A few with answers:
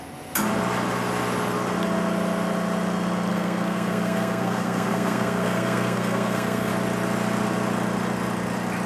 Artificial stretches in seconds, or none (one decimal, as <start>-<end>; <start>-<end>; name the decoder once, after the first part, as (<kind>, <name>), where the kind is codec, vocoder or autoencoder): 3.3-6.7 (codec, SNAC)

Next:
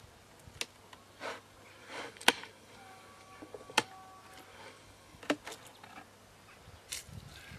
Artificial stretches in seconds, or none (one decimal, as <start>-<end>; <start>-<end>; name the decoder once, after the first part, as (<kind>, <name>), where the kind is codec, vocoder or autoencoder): 1.8-3.9 (codec, DAC); 4.5-5.2

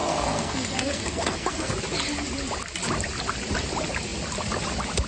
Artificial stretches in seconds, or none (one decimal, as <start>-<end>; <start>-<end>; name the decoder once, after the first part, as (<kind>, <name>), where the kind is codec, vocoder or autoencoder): 0.0-1.7 (codec, SNAC)

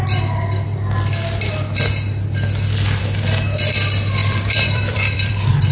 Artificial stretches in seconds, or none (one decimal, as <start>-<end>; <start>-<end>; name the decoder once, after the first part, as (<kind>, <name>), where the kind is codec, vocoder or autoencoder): 4.2-5.3 (vocoder, BigVGAN v2)